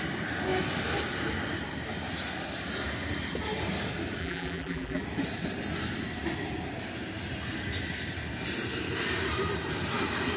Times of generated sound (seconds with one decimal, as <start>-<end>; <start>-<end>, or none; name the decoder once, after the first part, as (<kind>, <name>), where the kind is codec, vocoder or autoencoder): 4.2-5.0 (vocoder, BigVGAN v2)